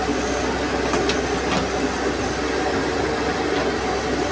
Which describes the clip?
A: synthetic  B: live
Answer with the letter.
B